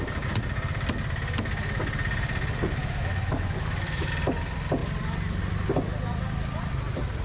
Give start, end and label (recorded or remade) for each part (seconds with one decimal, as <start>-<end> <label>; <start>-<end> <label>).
0.0-2.8 recorded; 2.8-4.1 remade; 4.1-7.2 recorded